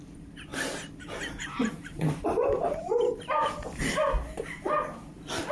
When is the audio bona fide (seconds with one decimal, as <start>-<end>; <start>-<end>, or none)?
0.0-0.5; 3.8-5.5